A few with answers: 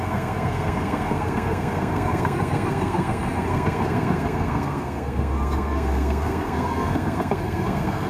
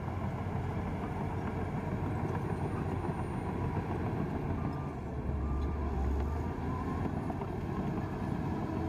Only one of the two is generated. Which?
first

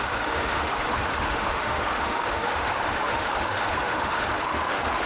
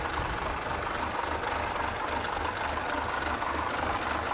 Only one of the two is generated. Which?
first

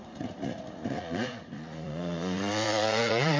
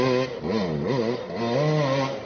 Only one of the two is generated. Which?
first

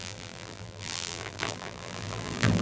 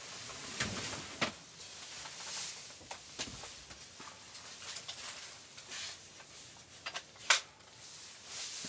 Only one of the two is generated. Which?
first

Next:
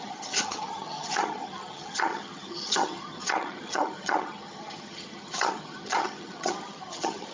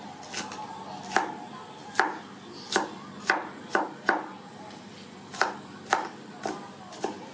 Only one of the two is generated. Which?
first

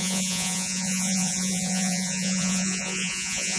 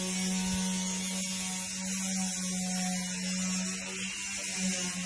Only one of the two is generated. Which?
first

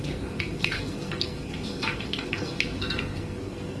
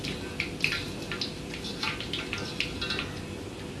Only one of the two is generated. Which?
first